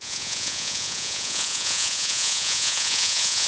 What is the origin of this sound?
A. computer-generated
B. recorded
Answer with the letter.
A